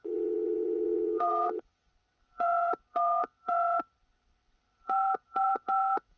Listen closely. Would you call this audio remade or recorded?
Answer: remade